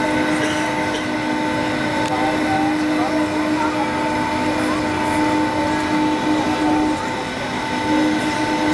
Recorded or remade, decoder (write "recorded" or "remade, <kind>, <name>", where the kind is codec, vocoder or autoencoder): recorded